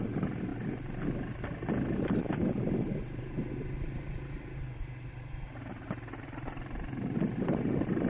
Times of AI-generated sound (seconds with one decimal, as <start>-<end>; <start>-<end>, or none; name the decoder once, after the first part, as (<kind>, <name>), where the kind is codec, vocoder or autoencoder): 0.0-0.5 (vocoder, BigVGAN v2); 2.2-8.1

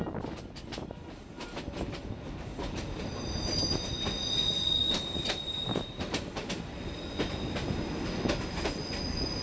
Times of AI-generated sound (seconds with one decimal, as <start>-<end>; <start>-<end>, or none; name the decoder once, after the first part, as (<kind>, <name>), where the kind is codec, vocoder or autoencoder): 2.5-3.9 (vocoder, BigVGAN v2); 4.8-6.5

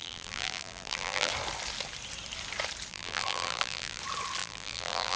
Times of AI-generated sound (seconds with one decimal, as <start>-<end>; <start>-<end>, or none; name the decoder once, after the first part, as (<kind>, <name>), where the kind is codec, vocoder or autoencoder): 0.0-1.3 (vocoder, BigVGAN v2); 2.9-4.0; 4.4-5.2

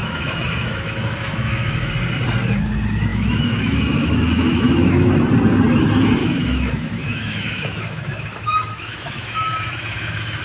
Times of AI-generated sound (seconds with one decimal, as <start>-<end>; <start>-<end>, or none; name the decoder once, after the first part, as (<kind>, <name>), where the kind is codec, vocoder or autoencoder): 0.0-1.9 (autoencoder, DAC-VAE); 3.1-5.1; 6.2-10.4

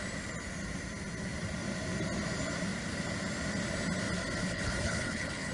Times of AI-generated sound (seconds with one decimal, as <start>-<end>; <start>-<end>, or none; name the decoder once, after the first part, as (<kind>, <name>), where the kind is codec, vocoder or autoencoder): 4.4-5.5 (codec, HILCodec)

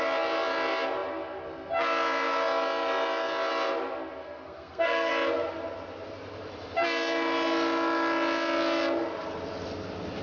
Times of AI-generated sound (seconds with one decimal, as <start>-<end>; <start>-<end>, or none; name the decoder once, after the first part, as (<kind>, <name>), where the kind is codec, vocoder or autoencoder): 4.2-5.1 (codec, SNAC)

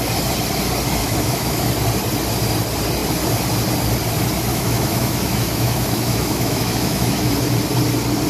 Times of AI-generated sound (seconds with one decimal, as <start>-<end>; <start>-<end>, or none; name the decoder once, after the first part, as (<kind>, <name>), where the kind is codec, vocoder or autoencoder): 1.0-1.7 (autoencoder, DAC-VAE); 4.5-7.3

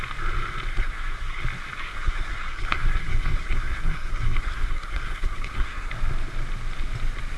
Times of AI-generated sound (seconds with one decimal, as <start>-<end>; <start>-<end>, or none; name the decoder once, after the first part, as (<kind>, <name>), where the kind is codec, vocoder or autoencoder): 0.7-1.4 (codec, SNAC); 1.8-5.9